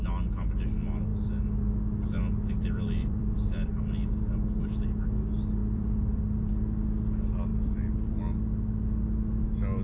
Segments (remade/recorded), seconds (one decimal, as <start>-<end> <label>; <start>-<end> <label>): 0.0-3.0 recorded; 3.0-3.8 remade; 3.8-5.6 recorded; 5.6-6.5 remade; 6.5-7.5 recorded; 7.5-8.2 remade; 8.2-9.8 recorded